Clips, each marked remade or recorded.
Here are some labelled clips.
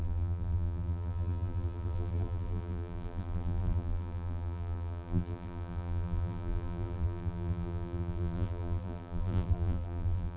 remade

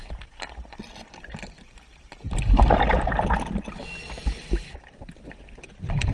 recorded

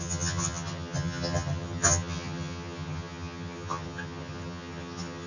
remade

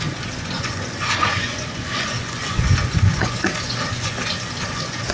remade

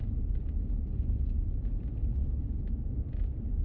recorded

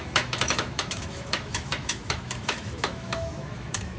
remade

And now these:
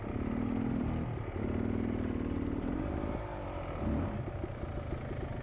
recorded